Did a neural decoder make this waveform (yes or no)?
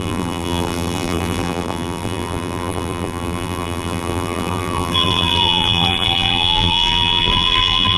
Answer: yes